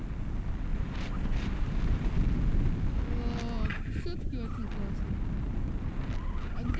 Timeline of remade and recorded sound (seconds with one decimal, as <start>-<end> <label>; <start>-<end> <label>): 0.0-0.7 recorded; 0.7-2.1 remade; 2.1-6.8 recorded